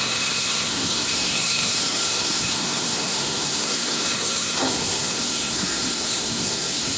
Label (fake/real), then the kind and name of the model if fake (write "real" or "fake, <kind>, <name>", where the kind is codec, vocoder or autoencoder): fake, codec, SNAC